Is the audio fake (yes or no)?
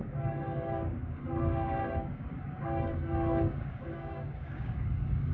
yes